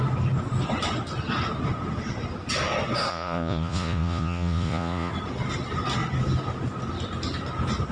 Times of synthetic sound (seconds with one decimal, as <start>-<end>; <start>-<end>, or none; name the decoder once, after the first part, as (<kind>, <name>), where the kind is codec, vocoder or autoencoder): 3.1-5.1 (vocoder, Vocos)

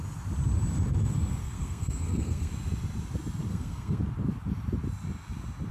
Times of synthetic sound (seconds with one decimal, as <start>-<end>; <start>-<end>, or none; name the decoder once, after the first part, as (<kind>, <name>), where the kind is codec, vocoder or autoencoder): 1.4-2.5 (codec, SNAC); 3.5-4.0

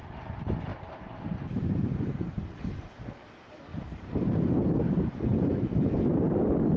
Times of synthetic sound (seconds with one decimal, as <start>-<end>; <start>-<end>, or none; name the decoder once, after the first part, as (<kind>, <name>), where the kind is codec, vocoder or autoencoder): 0.7-1.2 (vocoder, BigVGAN v2); 1.6-3.0; 3.7-4.5

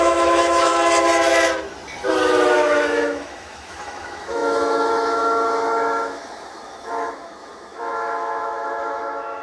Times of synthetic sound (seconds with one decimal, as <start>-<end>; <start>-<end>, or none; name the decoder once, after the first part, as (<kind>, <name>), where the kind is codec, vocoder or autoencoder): 0.0-0.7 (autoencoder, DAC-VAE); 2.1-9.4

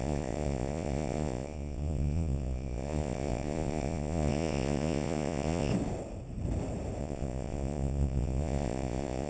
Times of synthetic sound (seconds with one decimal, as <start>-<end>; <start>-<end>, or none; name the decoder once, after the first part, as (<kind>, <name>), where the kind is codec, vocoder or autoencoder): 0.0-5.7 (vocoder, Vocos); 7.0-9.3

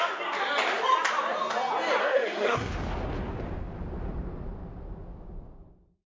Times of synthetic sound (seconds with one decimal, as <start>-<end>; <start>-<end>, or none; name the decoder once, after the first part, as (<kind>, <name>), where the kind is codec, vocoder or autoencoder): 2.0-2.7 (codec, SNAC)